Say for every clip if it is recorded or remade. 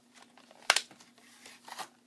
recorded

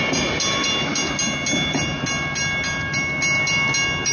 recorded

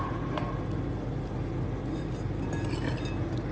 recorded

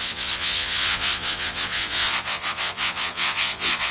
remade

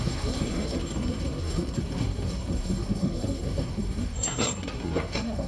remade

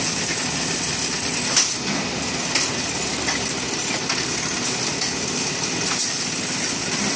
recorded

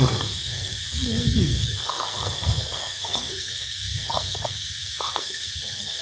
remade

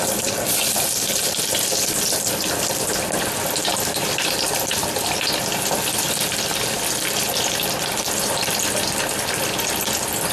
recorded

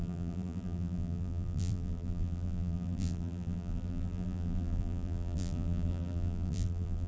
remade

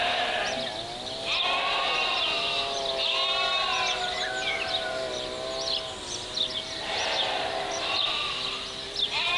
recorded